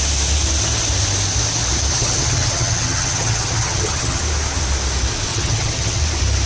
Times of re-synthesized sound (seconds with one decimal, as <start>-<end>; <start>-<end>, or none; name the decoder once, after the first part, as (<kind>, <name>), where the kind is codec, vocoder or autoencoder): 1.9-4.2 (vocoder, HiFi-GAN); 5.3-6.0